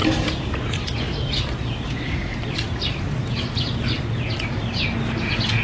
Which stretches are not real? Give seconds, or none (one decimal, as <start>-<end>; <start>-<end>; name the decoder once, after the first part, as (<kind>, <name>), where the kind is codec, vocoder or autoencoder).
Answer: 1.9-2.3 (codec, DAC)